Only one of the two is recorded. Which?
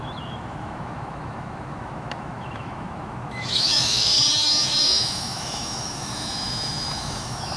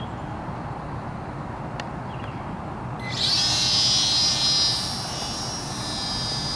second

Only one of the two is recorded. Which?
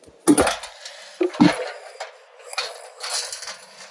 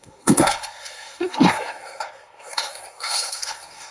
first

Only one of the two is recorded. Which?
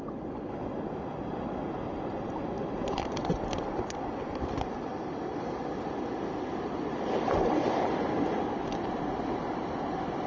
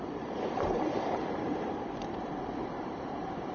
first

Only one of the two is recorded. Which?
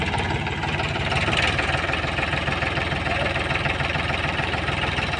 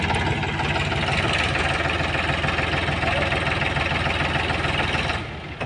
second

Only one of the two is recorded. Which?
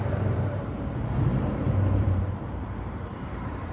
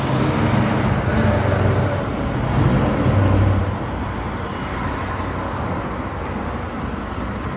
second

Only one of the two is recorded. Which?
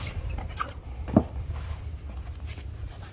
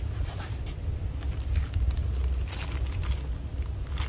second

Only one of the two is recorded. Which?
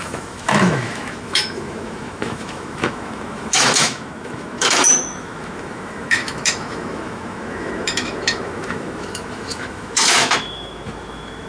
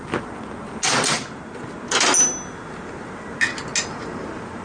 second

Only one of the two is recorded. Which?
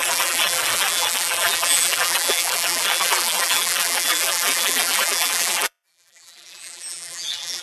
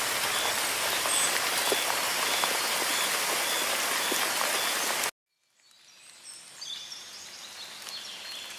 second